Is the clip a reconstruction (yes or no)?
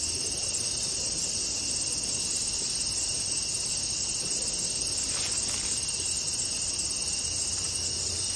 no